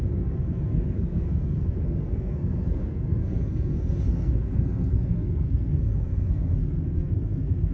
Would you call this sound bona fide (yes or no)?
no